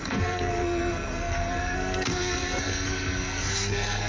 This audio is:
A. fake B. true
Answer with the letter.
A